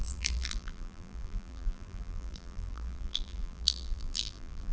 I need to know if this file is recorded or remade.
remade